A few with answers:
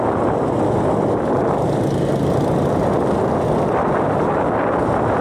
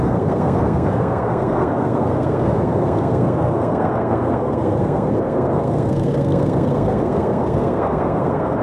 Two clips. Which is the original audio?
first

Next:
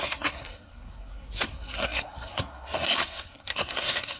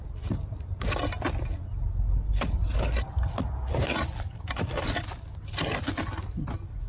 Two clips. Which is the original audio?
second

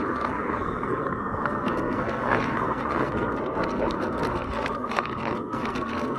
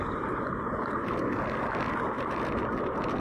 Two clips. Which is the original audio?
second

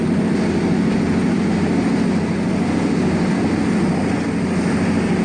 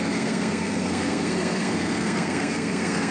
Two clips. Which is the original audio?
first